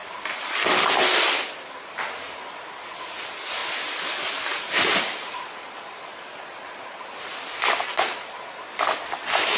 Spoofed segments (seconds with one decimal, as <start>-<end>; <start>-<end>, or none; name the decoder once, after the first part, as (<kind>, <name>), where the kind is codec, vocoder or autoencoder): none

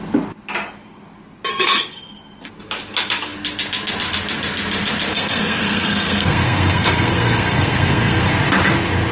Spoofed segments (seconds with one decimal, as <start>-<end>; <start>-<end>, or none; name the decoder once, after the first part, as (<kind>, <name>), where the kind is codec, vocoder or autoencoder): 1.5-2.2 (codec, SNAC); 5.1-8.3

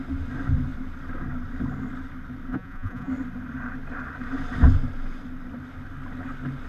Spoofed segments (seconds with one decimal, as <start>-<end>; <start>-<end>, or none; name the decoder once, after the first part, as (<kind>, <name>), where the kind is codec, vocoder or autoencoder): 2.5-3.1 (vocoder, Vocos)

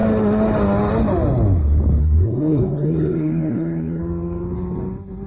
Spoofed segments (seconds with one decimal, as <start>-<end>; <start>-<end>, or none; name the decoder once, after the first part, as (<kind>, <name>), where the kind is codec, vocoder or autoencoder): 2.0-4.0 (codec, SNAC)

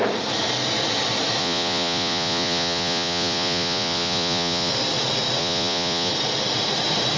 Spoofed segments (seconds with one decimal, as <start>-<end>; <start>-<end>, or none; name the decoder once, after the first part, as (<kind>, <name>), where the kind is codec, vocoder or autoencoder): 1.4-4.7 (vocoder, Vocos); 5.4-6.1